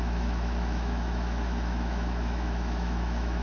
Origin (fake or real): fake